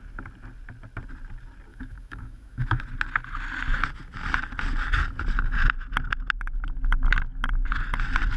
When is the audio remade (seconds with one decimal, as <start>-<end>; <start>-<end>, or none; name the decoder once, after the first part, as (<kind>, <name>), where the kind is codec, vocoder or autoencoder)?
1.7-2.8 (autoencoder, DAC-VAE)